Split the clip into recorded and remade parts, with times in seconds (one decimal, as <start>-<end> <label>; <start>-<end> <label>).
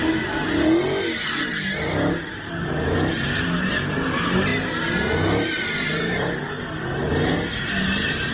0.0-8.3 recorded